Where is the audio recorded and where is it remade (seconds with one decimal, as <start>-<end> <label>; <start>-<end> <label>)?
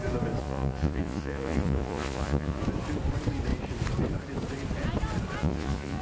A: 0.0-0.4 recorded; 0.4-2.6 remade; 2.6-5.4 recorded; 5.4-6.0 remade